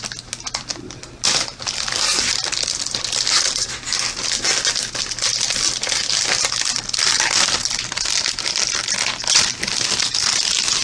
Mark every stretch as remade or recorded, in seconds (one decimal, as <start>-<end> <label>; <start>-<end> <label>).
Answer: 0.0-10.8 recorded